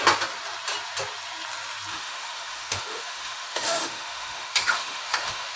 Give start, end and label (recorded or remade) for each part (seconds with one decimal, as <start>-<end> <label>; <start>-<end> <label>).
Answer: 0.0-1.9 recorded; 1.9-5.6 remade